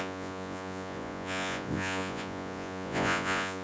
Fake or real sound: fake